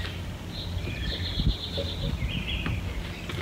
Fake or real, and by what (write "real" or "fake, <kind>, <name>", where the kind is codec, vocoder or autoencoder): real